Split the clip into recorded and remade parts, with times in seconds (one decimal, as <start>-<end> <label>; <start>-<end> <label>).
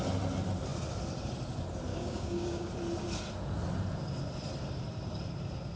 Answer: 0.0-1.9 recorded; 1.9-2.7 remade; 2.7-5.8 recorded